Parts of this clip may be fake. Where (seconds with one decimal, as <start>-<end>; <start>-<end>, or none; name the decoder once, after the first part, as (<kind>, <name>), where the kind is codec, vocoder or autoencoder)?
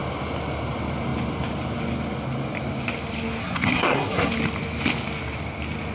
3.4-4.3 (codec, SNAC)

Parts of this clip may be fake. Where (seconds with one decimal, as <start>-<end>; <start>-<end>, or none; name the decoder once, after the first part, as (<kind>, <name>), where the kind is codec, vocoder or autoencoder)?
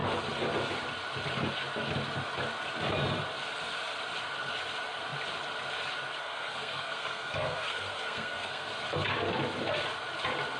6.2-8.7 (codec, SNAC)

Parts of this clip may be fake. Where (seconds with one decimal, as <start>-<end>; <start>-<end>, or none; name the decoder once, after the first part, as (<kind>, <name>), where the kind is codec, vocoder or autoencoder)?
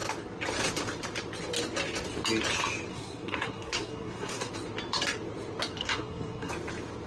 2.9-4.5 (codec, SNAC); 5.8-6.5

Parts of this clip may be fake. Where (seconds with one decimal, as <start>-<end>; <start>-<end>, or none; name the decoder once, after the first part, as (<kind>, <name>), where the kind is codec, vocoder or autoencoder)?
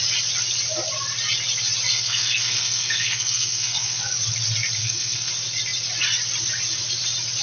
1.9-4.0 (codec, SNAC); 4.8-5.3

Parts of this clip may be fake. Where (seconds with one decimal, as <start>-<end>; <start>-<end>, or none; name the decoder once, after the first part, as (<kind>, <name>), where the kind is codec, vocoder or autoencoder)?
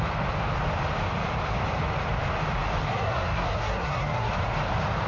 2.8-4.3 (codec, SNAC)